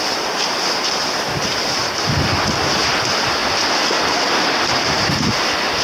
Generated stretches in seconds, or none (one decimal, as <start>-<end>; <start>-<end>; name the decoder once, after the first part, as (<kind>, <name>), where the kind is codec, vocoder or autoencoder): 0.0-1.8 (vocoder, BigVGAN v2); 3.0-3.4; 4.1-5.8